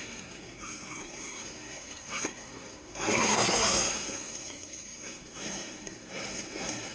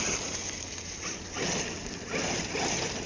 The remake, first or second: first